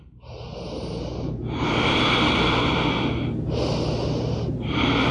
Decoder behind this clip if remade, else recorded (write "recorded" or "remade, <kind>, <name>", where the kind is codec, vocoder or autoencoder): recorded